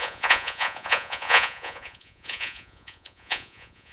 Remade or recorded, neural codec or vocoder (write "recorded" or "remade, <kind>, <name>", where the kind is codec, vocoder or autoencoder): remade, vocoder, Vocos